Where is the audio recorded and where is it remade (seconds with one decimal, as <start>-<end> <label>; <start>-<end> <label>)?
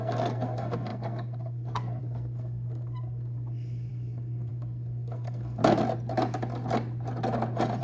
0.0-5.6 remade; 5.6-7.8 recorded